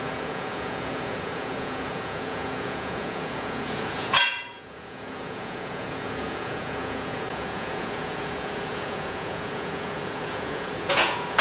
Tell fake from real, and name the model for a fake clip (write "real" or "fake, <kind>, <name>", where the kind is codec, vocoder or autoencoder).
fake, vocoder, Vocos